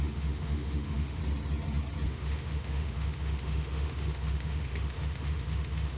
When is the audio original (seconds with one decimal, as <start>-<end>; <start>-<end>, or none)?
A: 1.2-2.1